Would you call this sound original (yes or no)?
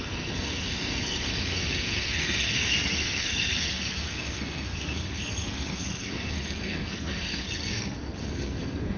no